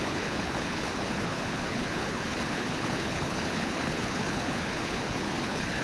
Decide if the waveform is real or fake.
fake